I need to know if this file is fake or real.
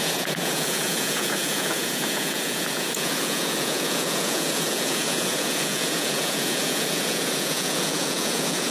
fake